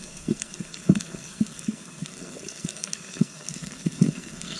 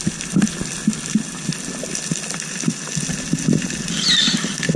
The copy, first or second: first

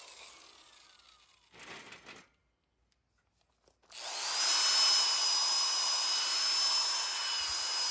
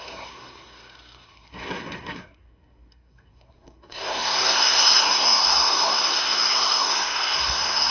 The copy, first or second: second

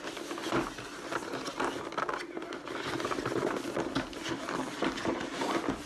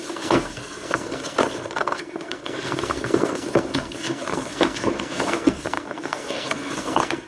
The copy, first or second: second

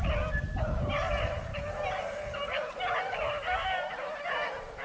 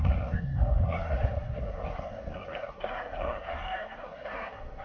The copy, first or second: second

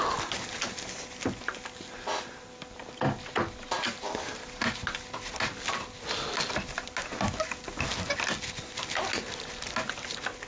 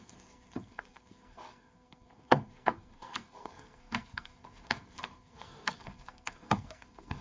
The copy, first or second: second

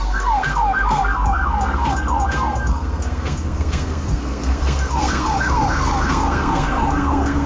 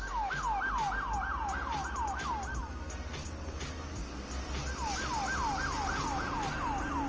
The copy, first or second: first